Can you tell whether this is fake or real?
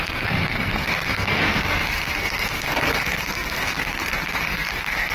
fake